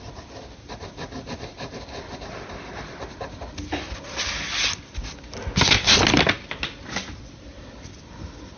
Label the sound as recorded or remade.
recorded